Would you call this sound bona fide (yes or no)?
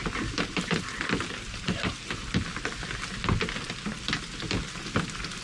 yes